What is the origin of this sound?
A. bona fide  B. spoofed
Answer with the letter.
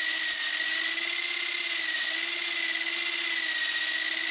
A